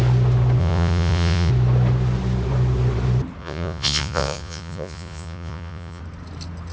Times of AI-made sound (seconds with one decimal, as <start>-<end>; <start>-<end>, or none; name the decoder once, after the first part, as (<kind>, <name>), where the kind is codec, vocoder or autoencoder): 0.6-1.5 (vocoder, Vocos); 3.4-6.0